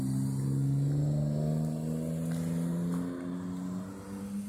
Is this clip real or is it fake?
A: real